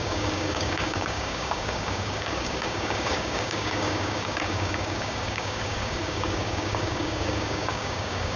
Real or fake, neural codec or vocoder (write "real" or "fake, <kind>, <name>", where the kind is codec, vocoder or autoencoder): fake, codec, DAC